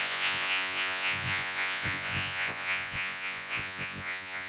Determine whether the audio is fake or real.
fake